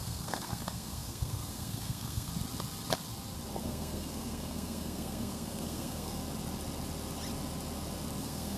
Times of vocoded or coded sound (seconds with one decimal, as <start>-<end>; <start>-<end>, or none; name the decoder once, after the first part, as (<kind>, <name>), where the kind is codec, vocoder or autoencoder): 0.0-2.3 (codec, SNAC); 3.6-6.2; 8.2-8.6

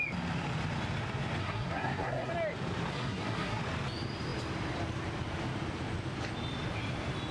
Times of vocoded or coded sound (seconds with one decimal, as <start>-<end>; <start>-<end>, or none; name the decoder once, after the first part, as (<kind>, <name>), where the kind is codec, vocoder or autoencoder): 1.4-2.3 (codec, SNAC); 2.9-3.6